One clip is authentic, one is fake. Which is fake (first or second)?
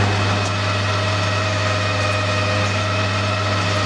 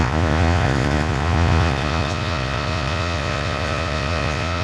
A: second